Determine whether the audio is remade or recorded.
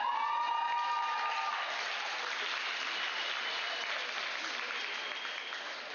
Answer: recorded